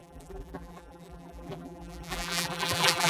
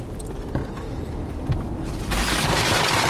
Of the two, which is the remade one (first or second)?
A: first